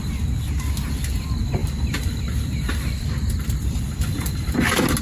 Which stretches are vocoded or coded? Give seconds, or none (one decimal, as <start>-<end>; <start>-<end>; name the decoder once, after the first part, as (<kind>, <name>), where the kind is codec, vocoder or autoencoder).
1.6-3.8 (vocoder, BigVGAN v2)